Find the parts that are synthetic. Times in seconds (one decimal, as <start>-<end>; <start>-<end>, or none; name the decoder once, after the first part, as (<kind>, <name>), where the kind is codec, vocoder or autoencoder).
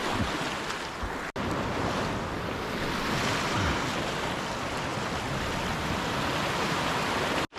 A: none